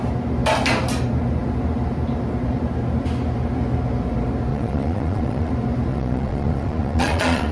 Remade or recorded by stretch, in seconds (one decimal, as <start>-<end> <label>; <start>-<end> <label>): 0.0-4.5 recorded; 4.5-5.5 remade; 5.5-5.9 recorded; 5.9-7.5 remade